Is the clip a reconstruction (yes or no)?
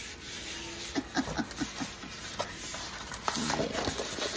no